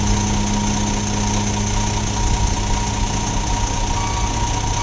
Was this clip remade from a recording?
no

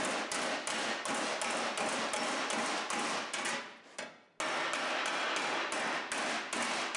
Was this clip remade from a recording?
no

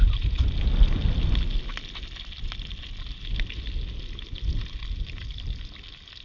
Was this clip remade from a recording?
no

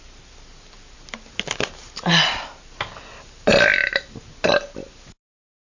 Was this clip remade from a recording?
no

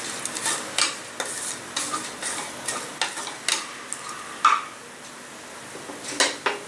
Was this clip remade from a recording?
no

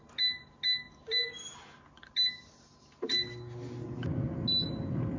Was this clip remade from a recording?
no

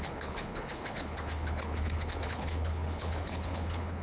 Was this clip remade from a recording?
yes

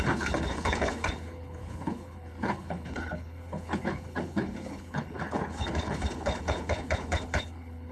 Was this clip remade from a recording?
yes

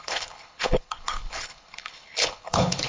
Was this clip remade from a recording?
yes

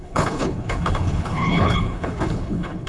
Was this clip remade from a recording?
yes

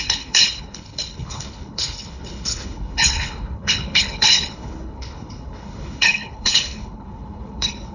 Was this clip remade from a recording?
yes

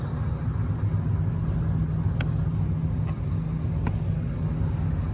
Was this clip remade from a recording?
no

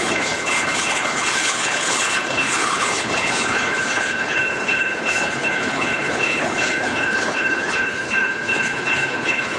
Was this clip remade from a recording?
yes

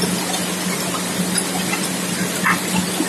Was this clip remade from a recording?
no